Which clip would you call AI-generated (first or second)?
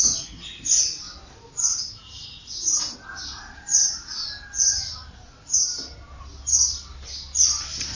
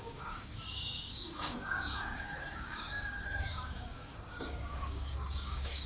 second